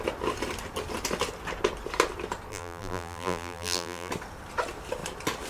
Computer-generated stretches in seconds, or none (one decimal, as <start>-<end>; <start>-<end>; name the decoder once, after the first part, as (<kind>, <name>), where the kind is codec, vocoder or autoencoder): 2.5-4.1 (vocoder, BigVGAN v2)